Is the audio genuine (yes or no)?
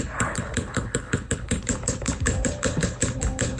no